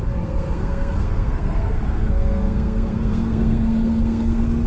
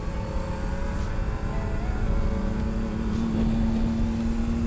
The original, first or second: second